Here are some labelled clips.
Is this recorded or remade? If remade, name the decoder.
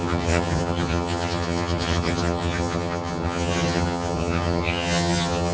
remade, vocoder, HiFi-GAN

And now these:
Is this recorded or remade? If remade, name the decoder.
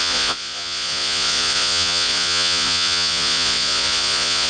remade, vocoder, Vocos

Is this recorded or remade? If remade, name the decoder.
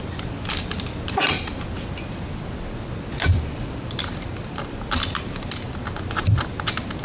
recorded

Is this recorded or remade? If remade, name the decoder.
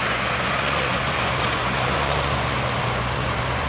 remade, vocoder, Vocos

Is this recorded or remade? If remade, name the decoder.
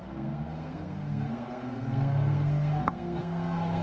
remade, codec, SNAC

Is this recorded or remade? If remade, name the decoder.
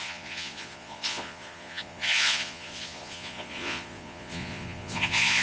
remade, vocoder, Vocos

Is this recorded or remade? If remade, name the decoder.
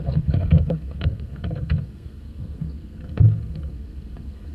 remade, codec, SNAC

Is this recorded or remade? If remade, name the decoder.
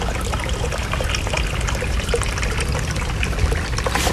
recorded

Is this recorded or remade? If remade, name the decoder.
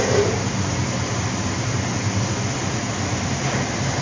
recorded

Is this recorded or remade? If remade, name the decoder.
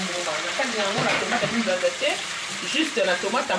remade, vocoder, BigVGAN v2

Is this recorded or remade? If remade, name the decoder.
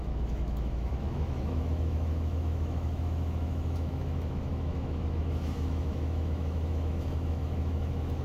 remade, autoencoder, DAC-VAE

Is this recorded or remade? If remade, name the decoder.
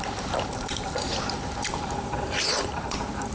remade, vocoder, BigVGAN v2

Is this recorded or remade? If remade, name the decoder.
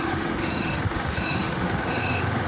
remade, autoencoder, DAC-VAE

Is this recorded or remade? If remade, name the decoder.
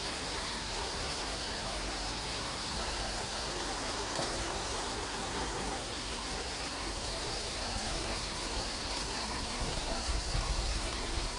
remade, codec, SNAC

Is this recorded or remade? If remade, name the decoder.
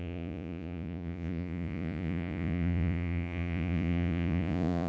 remade, vocoder, Vocos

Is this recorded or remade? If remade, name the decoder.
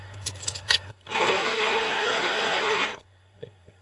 remade, codec, SNAC